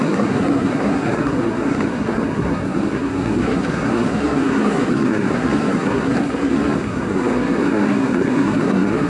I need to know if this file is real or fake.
fake